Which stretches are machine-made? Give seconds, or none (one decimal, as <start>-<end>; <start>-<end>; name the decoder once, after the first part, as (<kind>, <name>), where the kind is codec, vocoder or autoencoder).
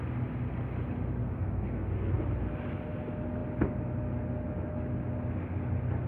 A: 1.2-2.2 (codec, SNAC)